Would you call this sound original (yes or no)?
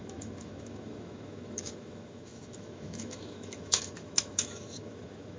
no